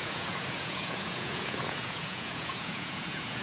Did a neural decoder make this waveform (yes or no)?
yes